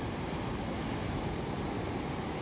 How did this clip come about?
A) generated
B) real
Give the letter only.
B